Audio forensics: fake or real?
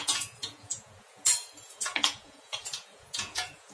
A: fake